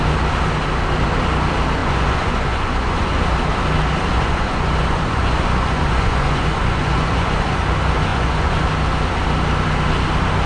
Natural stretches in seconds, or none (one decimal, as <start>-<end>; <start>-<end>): 0.0-1.8; 3.2-4.1; 7.6-8.1; 8.6-10.5